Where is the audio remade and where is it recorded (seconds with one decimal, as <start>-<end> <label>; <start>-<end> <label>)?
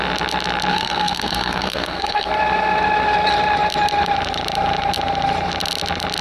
0.0-0.7 recorded; 0.7-2.3 remade; 2.3-6.2 recorded